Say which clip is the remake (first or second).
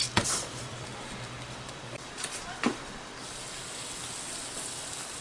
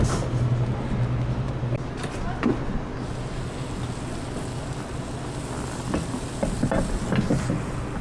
first